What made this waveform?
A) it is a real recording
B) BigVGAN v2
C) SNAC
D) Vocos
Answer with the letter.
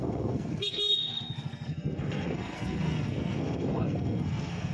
C